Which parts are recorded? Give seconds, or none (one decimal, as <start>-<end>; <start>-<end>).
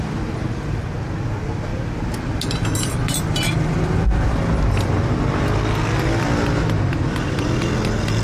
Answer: 0.0-8.2